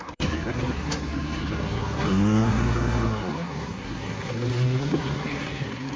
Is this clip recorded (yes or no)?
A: no